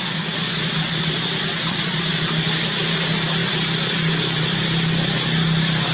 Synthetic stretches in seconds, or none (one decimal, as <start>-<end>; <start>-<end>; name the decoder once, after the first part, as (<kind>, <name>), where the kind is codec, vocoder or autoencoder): none